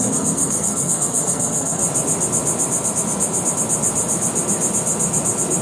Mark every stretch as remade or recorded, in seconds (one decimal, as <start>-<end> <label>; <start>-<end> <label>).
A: 0.0-1.8 remade; 1.8-5.6 recorded